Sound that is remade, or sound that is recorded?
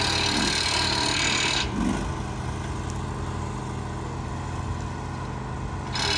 recorded